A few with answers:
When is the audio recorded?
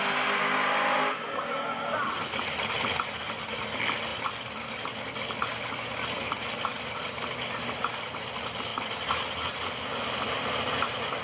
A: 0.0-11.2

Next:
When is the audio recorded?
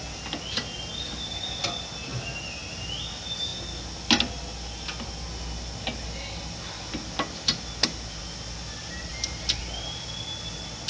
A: 0.0-9.1; 9.6-10.9